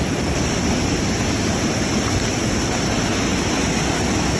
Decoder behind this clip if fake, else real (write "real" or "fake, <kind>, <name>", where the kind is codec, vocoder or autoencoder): real